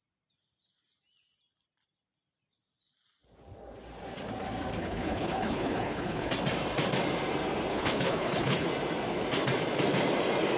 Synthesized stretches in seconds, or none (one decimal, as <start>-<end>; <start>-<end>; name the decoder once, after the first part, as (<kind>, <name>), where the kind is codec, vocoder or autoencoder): 4.8-6.3 (codec, HILCodec); 7.7-8.7